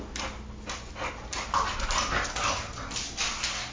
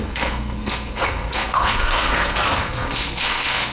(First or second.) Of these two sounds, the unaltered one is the first